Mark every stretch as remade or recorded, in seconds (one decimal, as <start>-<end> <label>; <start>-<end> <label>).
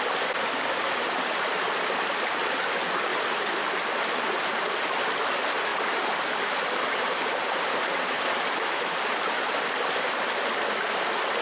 0.0-3.1 recorded; 3.1-3.7 remade; 3.7-5.7 recorded; 5.7-9.3 remade; 9.3-11.4 recorded